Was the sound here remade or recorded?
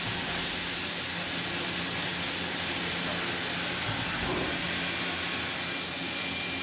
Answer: recorded